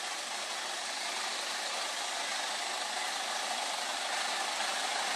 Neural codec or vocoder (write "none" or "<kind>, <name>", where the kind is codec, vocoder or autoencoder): none